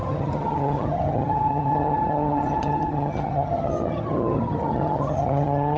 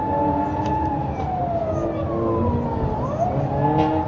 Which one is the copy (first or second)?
first